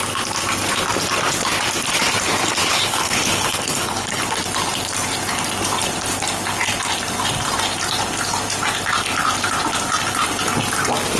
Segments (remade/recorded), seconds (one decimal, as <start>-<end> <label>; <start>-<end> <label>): 0.0-2.6 recorded; 2.6-4.2 remade; 4.2-11.2 recorded